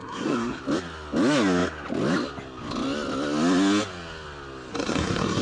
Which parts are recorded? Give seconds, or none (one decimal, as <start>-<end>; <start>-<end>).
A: 0.6-4.7